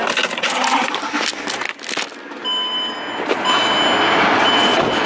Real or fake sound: real